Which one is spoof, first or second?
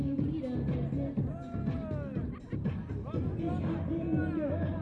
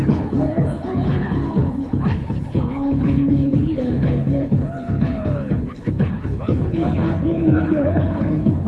second